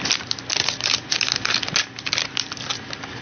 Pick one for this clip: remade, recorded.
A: recorded